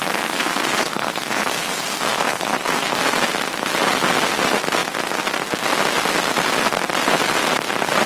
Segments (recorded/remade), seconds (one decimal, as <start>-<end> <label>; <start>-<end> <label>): 0.0-3.0 remade; 3.0-8.1 recorded